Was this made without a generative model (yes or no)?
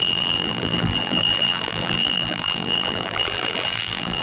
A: no